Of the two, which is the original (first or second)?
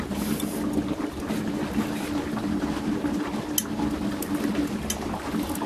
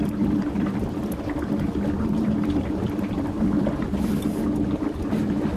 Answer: first